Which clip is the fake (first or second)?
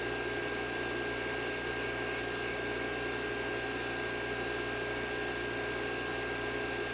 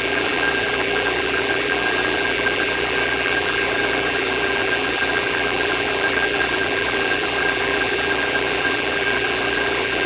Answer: second